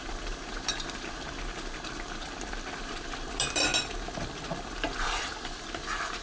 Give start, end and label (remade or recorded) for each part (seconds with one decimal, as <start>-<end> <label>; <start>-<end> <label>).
0.0-3.7 remade; 3.7-5.2 recorded; 5.2-6.2 remade